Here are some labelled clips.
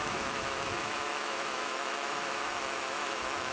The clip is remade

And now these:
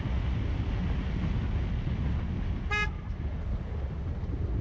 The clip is recorded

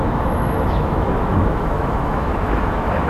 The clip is remade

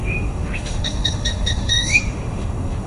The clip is remade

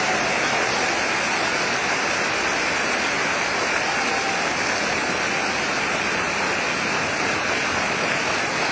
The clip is recorded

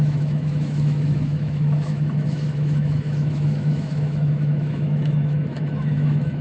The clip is remade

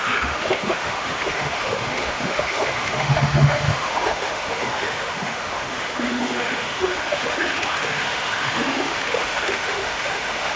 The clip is remade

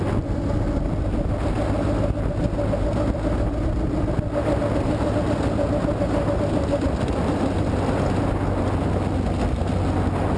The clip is recorded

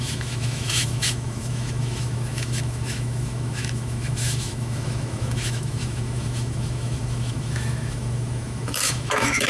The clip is remade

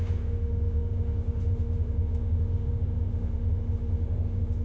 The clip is remade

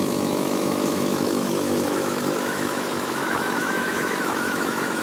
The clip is remade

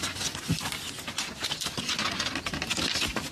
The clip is recorded